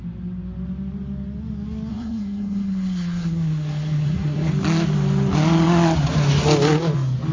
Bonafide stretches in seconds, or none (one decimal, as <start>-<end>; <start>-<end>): 0.0-1.9; 4.5-7.3